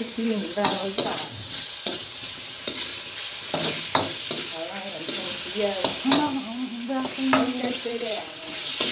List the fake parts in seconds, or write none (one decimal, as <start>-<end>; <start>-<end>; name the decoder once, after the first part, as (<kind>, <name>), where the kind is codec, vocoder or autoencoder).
0.0-2.9 (vocoder, WaveNeXt); 7.6-8.9